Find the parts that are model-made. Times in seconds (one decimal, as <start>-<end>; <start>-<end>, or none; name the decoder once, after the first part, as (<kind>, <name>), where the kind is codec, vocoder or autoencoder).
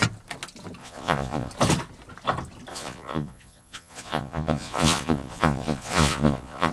0.8-1.5 (vocoder, Vocos); 2.7-6.7